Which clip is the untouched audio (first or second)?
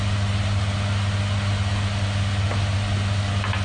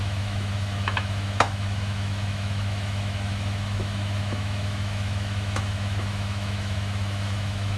first